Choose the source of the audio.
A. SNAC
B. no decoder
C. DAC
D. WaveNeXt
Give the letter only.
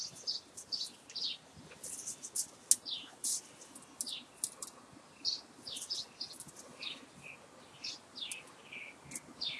B